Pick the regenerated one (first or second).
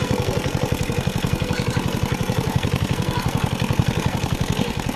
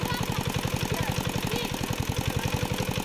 first